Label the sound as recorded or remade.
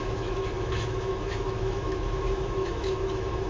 remade